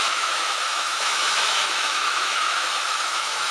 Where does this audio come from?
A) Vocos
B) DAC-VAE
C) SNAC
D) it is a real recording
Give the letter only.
B